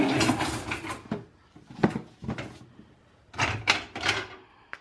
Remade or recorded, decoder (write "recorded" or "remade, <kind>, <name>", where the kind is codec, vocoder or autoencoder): recorded